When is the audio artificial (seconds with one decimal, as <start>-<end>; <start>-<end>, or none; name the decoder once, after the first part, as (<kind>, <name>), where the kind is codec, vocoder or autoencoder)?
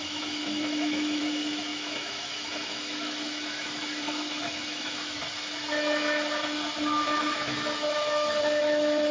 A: 0.0-5.2 (autoencoder, DAC-VAE); 7.2-9.1